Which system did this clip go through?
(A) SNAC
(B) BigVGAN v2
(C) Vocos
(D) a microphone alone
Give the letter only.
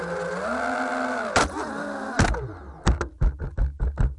D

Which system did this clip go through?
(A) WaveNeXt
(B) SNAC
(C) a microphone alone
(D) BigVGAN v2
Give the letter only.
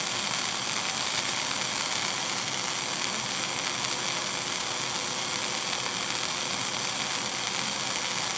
C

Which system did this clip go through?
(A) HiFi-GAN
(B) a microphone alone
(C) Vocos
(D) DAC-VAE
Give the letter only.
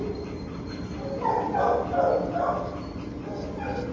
B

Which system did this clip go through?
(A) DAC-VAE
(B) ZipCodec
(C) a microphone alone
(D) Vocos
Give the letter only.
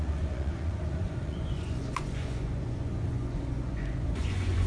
D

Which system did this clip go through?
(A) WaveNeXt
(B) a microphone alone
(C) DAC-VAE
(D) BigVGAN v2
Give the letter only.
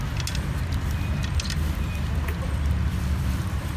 B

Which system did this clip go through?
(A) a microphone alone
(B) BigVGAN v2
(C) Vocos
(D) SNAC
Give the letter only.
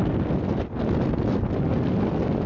A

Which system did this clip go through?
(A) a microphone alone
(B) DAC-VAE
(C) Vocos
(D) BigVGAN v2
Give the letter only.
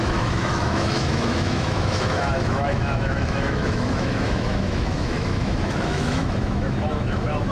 B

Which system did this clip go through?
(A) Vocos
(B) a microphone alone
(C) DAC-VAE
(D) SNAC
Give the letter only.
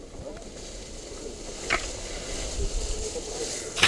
B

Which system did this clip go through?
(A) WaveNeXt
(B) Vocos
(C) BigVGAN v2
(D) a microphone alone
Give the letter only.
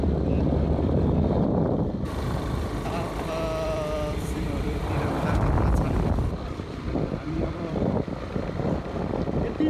C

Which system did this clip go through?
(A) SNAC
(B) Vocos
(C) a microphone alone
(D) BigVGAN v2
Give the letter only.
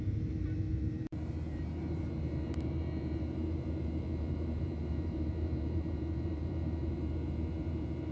D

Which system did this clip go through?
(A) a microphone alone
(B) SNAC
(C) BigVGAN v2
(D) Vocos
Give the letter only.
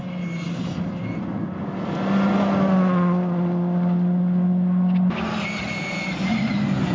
A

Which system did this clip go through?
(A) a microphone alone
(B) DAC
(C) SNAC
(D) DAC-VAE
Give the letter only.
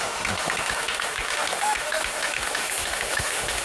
D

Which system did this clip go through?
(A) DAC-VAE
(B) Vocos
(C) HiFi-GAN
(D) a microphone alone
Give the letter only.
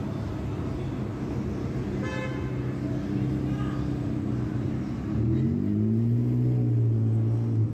D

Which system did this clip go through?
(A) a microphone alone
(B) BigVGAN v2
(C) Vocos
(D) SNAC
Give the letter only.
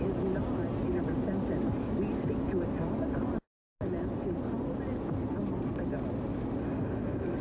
A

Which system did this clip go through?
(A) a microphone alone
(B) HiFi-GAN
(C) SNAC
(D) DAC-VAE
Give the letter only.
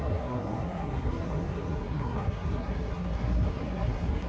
C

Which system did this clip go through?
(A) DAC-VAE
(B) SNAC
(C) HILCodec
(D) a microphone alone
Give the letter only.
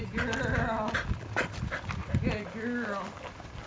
D